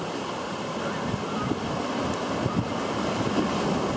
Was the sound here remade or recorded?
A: recorded